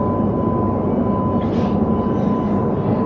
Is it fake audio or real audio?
real